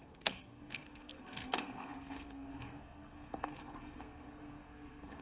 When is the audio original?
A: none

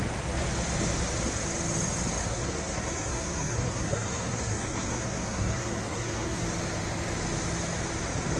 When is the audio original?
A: 0.0-2.2; 6.4-8.4

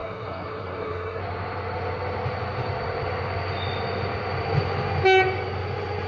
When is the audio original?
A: 1.2-6.1

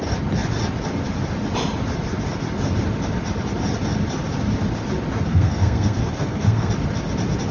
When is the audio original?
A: 0.0-5.3; 6.7-7.5

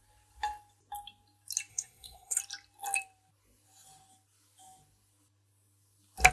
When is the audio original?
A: 0.0-1.7; 2.4-6.3